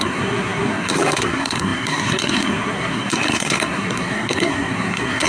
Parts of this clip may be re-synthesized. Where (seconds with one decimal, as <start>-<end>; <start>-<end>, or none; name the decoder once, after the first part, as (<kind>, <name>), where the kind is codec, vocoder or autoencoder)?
0.0-5.3 (codec, SNAC)